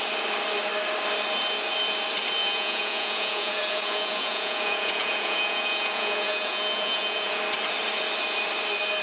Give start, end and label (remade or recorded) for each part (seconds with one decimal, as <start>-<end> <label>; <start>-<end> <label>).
0.0-2.4 recorded; 2.4-7.4 remade; 7.4-9.0 recorded